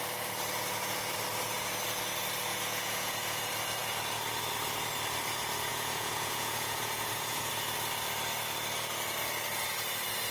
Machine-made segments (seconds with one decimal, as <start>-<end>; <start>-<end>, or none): 2.5-3.4; 5.7-7.5